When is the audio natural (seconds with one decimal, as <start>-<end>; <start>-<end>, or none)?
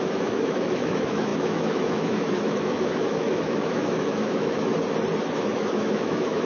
4.7-5.4